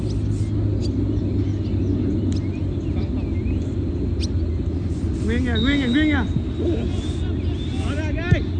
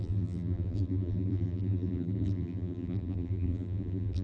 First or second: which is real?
first